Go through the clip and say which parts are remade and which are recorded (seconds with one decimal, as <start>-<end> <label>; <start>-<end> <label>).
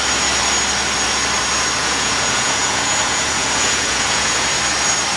0.0-1.8 recorded; 1.8-4.5 remade; 4.5-5.2 recorded